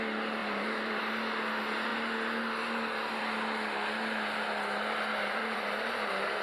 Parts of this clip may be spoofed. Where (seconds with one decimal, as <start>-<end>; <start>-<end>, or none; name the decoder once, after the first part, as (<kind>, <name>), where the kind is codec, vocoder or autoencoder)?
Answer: 0.4-1.0 (vocoder, BigVGAN v2); 5.1-6.4